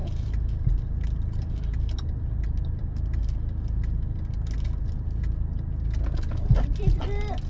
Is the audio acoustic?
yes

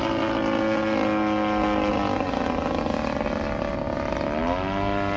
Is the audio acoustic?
yes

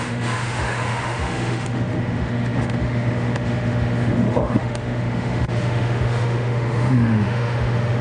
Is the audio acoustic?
no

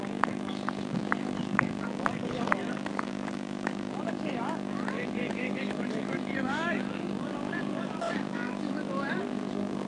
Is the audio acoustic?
no